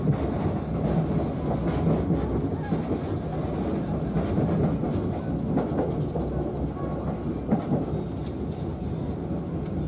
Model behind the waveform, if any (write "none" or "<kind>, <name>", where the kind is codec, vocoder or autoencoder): none